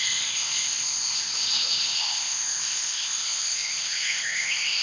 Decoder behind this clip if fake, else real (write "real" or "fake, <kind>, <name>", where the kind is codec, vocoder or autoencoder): fake, codec, ZipCodec